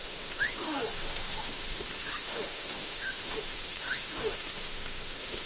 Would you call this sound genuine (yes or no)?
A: no